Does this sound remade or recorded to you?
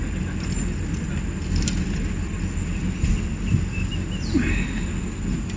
recorded